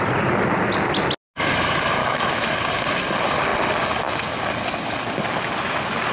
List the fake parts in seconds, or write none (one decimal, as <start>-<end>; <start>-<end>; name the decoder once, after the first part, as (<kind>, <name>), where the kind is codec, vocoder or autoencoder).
2.0-2.5 (autoencoder, DAC-VAE)